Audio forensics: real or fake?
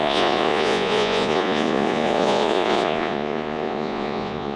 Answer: fake